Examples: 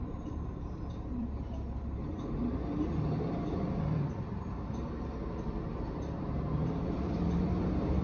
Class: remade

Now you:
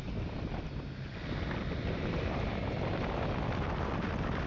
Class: recorded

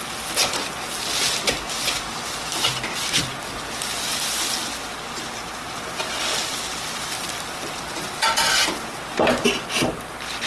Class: recorded